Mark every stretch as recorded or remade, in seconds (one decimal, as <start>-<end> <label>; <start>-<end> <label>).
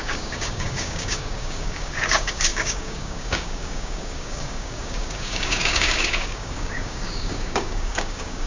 0.0-8.5 remade